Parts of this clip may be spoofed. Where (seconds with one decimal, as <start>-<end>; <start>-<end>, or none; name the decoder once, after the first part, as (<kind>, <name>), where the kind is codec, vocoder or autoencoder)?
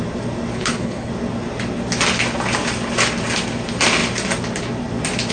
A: 0.5-1.1 (codec, HILCodec)